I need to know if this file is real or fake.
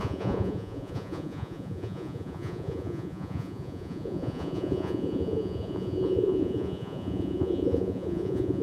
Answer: fake